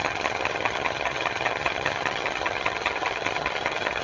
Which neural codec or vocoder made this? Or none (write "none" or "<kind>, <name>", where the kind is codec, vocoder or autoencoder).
vocoder, HiFi-GAN